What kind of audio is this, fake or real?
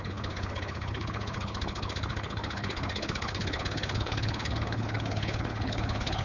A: fake